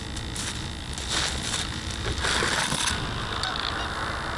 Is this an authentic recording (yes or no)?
yes